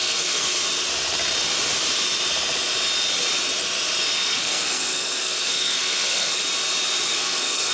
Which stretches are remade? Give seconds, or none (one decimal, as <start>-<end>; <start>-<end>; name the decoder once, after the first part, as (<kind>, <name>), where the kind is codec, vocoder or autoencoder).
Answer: 0.0-0.6 (codec, SNAC); 4.2-6.4; 7.1-7.7